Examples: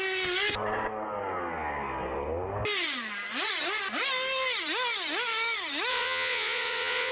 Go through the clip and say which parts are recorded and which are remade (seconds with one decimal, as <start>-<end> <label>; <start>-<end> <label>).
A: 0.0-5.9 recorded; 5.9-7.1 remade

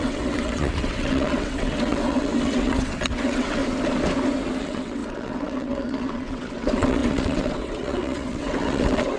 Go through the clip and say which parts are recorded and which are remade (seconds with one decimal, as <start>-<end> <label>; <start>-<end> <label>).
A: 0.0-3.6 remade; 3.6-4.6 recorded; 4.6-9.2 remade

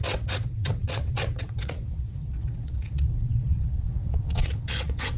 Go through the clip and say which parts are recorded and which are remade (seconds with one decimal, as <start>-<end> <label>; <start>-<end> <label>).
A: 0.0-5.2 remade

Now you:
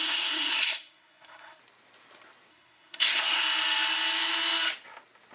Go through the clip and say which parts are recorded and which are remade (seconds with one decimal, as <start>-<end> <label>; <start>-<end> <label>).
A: 0.0-1.6 remade; 1.6-2.5 recorded; 2.5-3.4 remade; 3.4-5.3 recorded